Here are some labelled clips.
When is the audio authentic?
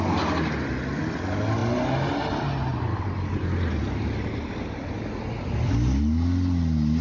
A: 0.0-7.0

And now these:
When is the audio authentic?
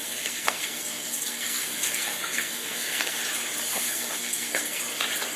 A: 3.2-3.7; 4.8-5.4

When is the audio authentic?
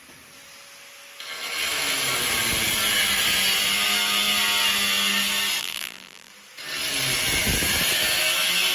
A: 0.0-5.6; 6.3-8.7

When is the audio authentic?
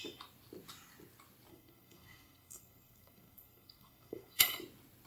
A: 0.0-1.5; 4.6-5.1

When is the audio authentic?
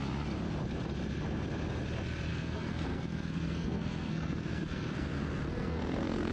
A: 0.0-2.3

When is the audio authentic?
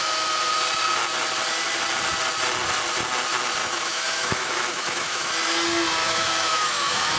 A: 0.0-3.6; 5.3-6.0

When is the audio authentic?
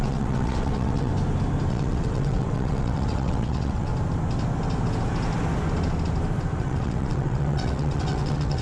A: 1.1-1.7; 3.9-6.6